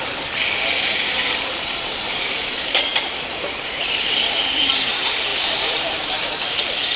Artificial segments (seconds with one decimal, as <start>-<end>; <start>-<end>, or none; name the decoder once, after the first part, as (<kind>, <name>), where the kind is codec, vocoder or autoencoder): 0.9-3.8 (vocoder, BigVGAN v2); 5.3-6.6